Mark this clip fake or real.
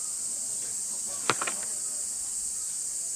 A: real